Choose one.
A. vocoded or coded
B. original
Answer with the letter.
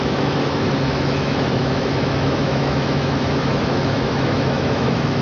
A